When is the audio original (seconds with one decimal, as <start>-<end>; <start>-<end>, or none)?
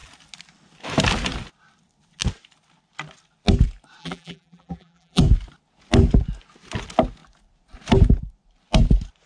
0.0-4.0; 5.2-9.3